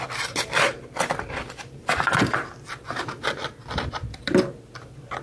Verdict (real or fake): fake